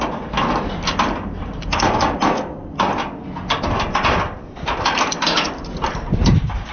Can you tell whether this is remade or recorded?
recorded